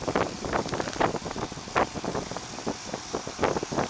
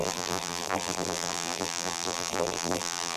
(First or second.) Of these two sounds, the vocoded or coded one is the second